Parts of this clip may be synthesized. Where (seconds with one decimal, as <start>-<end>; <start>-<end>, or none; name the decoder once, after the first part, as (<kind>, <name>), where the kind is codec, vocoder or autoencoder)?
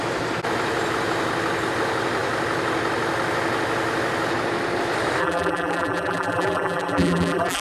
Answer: 5.2-7.6 (vocoder, BigVGAN v2)